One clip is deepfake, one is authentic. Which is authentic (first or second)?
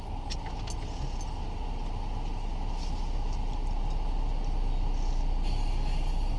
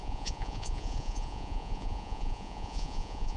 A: first